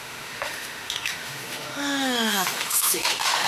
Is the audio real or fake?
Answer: fake